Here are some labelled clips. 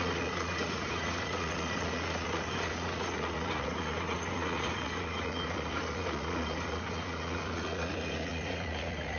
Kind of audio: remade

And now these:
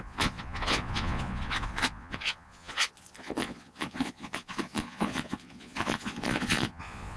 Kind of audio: remade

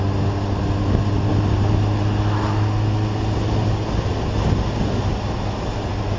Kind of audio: recorded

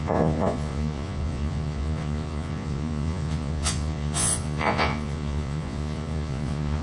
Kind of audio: remade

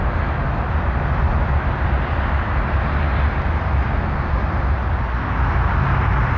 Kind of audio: recorded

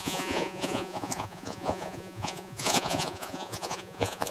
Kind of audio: remade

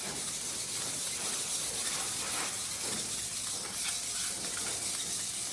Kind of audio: recorded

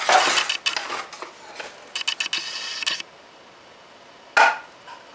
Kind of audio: recorded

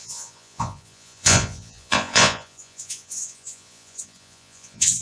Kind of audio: remade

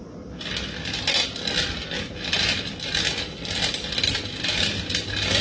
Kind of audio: recorded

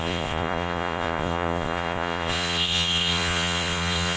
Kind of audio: remade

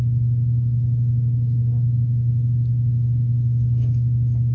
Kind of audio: recorded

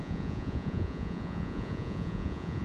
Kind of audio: remade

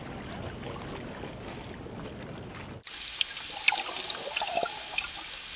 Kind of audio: recorded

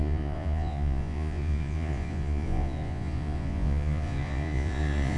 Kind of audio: remade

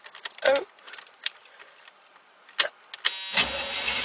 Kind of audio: recorded